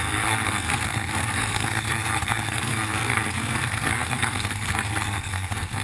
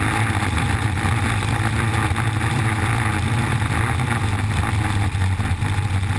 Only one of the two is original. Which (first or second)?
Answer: second